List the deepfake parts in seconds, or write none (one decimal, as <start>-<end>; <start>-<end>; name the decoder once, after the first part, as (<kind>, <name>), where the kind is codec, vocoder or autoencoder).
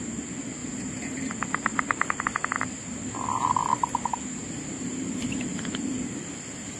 0.6-1.2 (vocoder, BigVGAN v2); 1.7-2.2; 3.7-5.7